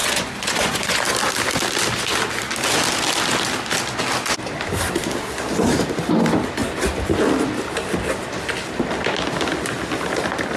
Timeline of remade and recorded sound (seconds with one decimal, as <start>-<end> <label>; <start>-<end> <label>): 0.0-1.0 remade; 1.0-10.6 recorded